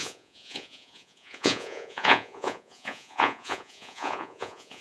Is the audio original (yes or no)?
no